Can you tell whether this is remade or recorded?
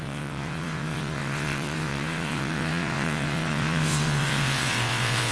remade